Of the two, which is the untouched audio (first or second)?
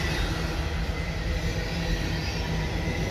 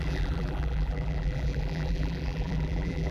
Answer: first